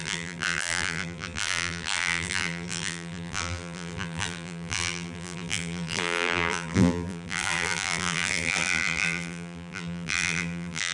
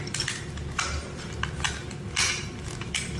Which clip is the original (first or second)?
second